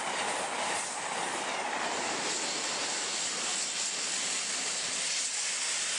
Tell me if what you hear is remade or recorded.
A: recorded